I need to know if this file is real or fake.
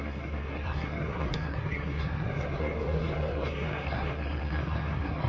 fake